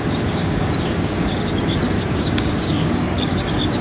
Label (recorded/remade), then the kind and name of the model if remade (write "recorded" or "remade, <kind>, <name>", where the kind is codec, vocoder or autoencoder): remade, codec, DAC